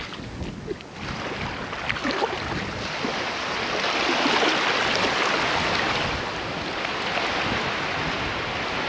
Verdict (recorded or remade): recorded